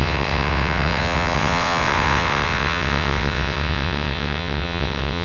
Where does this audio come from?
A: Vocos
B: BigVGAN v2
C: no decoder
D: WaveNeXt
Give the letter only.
D